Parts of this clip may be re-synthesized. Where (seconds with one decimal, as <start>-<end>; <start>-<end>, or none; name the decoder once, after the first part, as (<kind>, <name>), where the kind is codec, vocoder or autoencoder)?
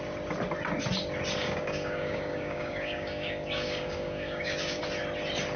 1.4-4.8 (codec, DAC)